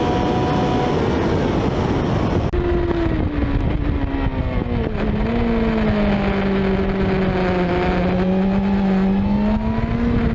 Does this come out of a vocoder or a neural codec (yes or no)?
no